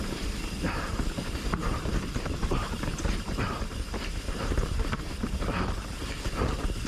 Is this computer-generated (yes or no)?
yes